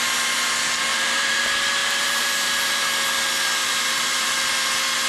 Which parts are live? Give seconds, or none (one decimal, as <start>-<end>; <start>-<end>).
0.0-0.9; 1.4-1.8; 2.8-3.6; 4.5-5.1